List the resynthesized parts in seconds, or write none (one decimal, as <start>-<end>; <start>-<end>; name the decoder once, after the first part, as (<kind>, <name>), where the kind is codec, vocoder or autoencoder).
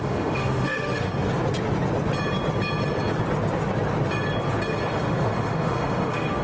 0.0-1.1 (autoencoder, DAC-VAE); 4.9-6.4